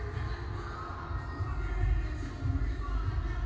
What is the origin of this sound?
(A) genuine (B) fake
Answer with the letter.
A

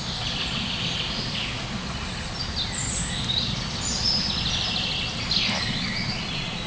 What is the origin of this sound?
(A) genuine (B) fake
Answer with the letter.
A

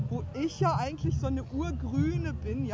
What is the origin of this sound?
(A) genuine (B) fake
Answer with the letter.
A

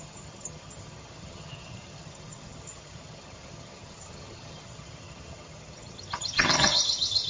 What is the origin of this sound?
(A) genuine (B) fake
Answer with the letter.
B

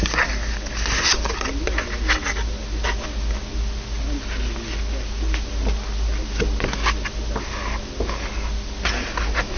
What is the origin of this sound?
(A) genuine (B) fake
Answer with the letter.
A